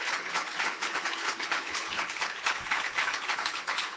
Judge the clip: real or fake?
fake